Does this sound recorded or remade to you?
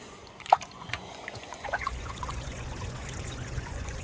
remade